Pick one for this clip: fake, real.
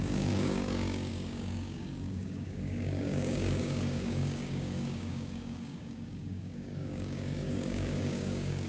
fake